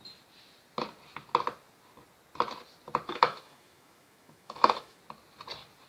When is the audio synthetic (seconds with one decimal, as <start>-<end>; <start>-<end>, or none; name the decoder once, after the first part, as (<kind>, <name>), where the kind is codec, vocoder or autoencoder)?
3.1-5.0 (autoencoder, DAC-VAE)